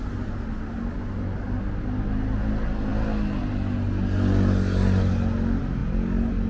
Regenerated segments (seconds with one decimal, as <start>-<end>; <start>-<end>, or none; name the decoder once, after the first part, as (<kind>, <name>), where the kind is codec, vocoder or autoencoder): none